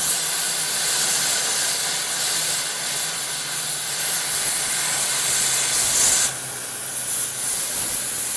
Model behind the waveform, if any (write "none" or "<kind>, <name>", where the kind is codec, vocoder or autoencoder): none